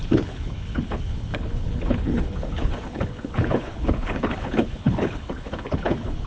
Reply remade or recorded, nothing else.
remade